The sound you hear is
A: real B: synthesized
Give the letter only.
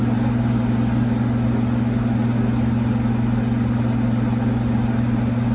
A